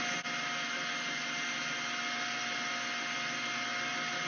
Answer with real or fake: real